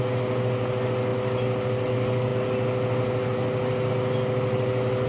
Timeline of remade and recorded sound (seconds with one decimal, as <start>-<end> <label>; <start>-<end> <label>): 0.0-5.1 recorded